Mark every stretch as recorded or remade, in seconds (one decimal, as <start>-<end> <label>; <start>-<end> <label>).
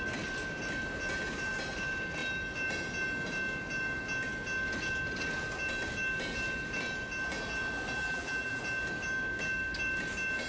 0.0-8.0 recorded; 8.0-8.6 remade; 8.6-10.5 recorded